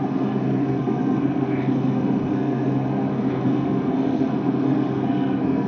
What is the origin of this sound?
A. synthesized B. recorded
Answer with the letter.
A